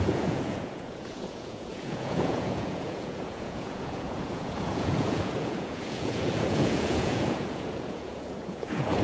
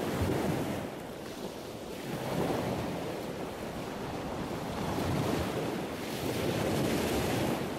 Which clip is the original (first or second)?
second